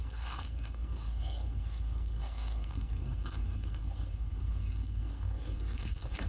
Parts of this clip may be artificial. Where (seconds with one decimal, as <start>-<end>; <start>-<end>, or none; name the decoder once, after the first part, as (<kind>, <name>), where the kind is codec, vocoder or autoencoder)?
0.0-6.3 (codec, SNAC)